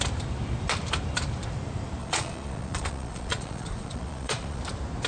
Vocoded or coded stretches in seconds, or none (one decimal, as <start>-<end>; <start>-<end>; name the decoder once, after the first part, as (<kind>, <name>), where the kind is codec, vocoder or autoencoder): 2.0-4.6 (vocoder, Vocos)